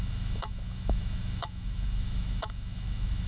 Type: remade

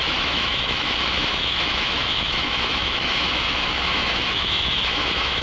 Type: remade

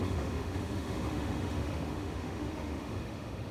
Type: remade